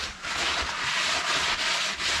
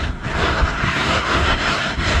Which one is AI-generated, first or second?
second